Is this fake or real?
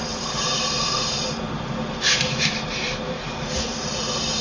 fake